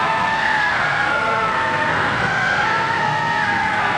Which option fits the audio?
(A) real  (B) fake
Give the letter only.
B